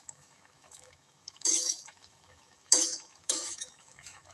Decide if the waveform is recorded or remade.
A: remade